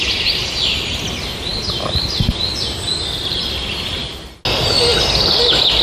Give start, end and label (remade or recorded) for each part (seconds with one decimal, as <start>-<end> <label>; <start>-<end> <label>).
0.0-5.8 recorded